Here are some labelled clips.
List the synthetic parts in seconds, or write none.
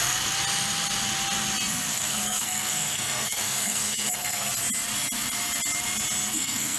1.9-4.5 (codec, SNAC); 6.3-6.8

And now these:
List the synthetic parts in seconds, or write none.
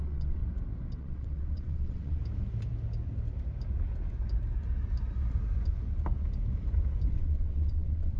0.0-0.4 (vocoder, WaveNeXt); 1.0-2.2; 7.1-8.2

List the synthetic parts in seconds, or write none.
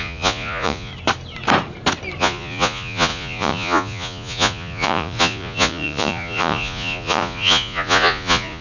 0.0-0.9 (vocoder, Vocos); 2.2-8.6